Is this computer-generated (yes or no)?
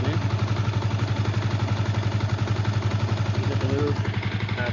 no